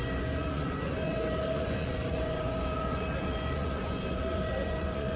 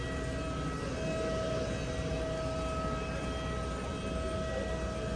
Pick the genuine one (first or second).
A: second